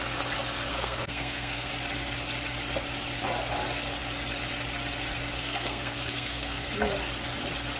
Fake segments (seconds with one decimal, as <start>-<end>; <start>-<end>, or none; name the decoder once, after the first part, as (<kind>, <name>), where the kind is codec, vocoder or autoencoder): 0.7-1.7 (codec, SNAC); 5.4-6.7